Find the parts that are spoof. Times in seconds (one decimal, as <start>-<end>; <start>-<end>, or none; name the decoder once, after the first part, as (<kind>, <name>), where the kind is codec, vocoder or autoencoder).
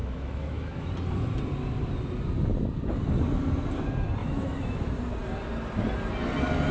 0.0-0.9 (autoencoder, DAC-VAE); 4.2-4.7